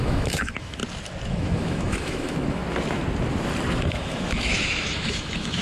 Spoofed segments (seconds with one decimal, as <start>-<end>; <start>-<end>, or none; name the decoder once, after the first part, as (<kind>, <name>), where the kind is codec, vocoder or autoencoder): 0.0-0.8 (autoencoder, DAC-VAE); 1.3-2.6; 3.8-5.6